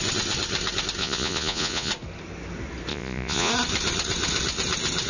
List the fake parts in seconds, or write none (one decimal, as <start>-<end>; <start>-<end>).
1.0-1.9; 2.9-3.5